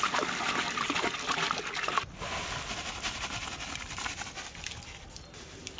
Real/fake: real